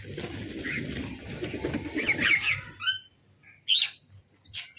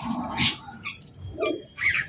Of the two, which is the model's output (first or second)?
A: second